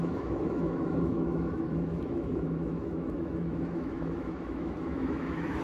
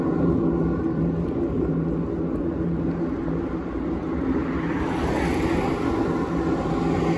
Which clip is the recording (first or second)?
second